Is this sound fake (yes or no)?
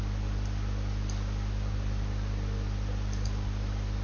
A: no